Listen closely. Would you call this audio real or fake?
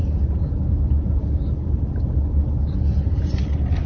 real